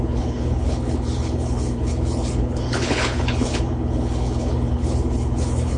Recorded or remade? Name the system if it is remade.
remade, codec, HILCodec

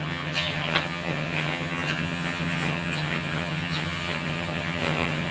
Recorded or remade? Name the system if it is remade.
remade, vocoder, HiFi-GAN